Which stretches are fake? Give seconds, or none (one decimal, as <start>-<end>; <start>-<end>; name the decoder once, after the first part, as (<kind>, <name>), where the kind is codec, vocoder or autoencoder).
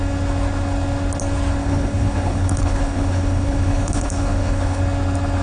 1.6-4.8 (codec, HILCodec)